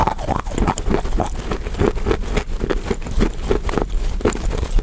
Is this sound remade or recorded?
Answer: recorded